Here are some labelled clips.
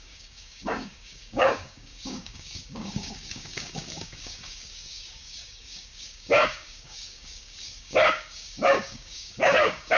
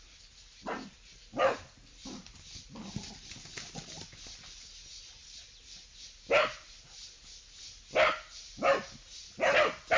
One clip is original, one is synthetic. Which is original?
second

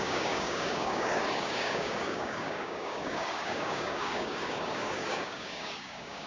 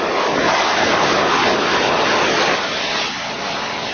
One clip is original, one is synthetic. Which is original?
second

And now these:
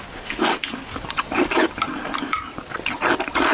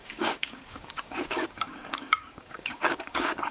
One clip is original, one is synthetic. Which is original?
first